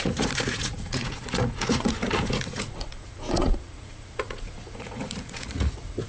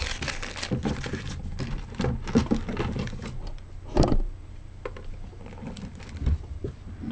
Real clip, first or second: second